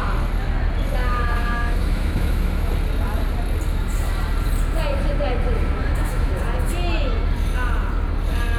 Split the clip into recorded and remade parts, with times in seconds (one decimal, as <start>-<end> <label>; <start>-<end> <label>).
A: 0.0-1.0 recorded; 1.0-2.7 remade; 2.7-5.8 recorded; 5.8-6.4 remade; 6.4-8.6 recorded